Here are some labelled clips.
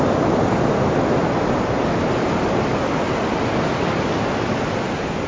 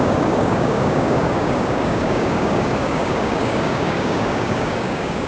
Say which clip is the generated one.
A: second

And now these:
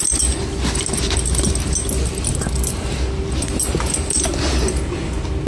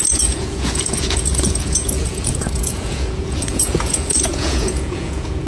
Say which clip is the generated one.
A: second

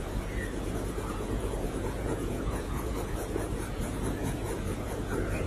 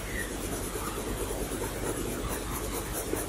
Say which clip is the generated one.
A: first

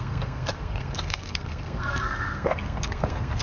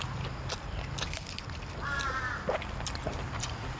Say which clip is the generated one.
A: first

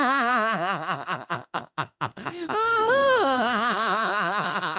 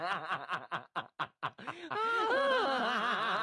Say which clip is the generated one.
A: first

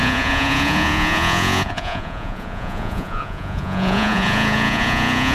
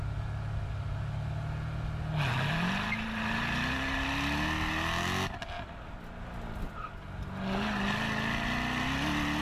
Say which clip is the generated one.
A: first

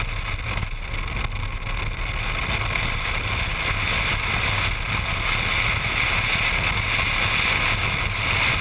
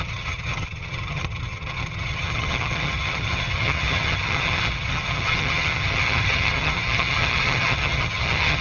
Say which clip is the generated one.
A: second